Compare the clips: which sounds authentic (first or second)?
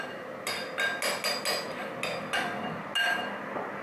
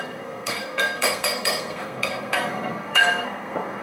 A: first